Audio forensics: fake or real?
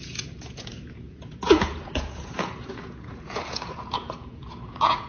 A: fake